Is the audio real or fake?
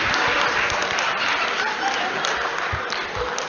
real